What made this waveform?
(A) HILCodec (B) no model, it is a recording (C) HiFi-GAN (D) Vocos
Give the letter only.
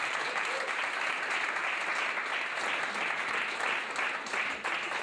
B